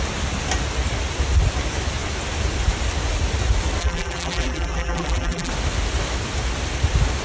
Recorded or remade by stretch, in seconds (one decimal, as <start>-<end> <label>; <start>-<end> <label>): 0.0-3.8 recorded; 3.8-5.5 remade; 5.5-7.2 recorded